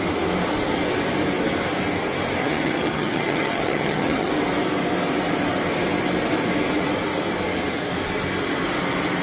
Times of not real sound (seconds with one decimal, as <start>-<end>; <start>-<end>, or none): 2.4-4.3